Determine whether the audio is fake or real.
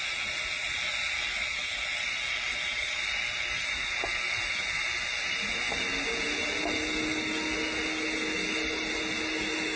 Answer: real